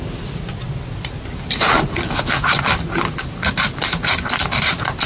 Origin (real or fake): real